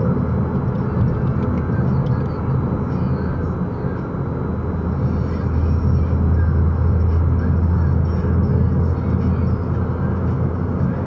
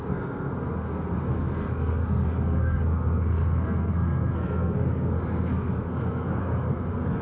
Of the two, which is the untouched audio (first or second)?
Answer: first